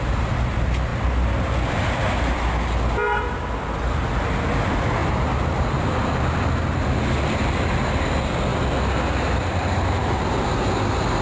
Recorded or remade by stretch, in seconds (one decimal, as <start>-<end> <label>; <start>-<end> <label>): 0.0-5.0 recorded; 5.0-6.4 remade; 6.4-8.5 recorded; 8.5-10.7 remade; 10.7-11.2 recorded